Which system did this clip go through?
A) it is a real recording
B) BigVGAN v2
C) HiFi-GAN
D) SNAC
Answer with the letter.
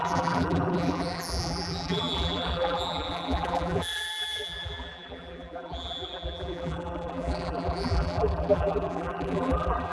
B